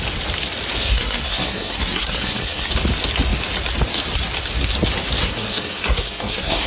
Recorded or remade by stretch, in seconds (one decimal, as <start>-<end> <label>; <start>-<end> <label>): 0.0-0.8 recorded; 0.8-2.7 remade; 2.7-5.2 recorded; 5.2-6.7 remade